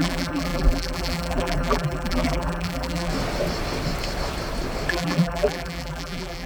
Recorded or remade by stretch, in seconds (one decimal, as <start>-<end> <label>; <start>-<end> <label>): 0.0-3.1 remade; 3.1-4.9 recorded; 4.9-6.5 remade